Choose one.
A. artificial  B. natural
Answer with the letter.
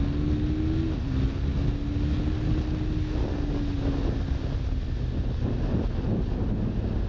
B